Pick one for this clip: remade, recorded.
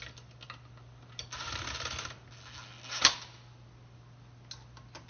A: recorded